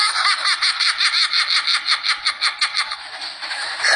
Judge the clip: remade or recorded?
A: recorded